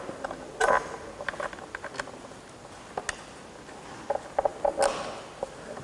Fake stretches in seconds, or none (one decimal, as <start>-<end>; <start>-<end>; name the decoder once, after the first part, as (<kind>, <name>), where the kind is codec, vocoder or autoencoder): none